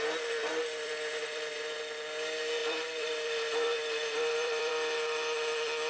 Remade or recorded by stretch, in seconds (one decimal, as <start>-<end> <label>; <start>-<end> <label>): 0.0-0.4 recorded; 0.4-1.6 remade; 1.6-2.6 recorded; 2.6-4.7 remade; 4.7-5.9 recorded